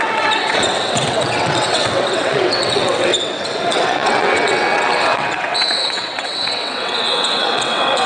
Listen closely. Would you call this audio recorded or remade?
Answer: remade